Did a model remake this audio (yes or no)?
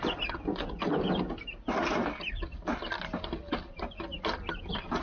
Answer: no